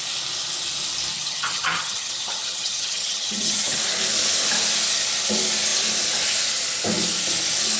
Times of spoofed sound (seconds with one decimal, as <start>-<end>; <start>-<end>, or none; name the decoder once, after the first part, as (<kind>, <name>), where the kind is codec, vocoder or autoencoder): 1.1-3.8 (vocoder, HiFi-GAN)